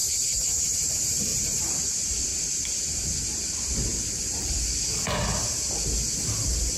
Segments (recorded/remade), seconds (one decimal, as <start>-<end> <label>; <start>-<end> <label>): 0.0-0.9 remade; 0.9-1.3 recorded; 1.3-1.8 remade; 1.8-2.3 recorded; 2.3-2.8 remade; 2.8-6.8 recorded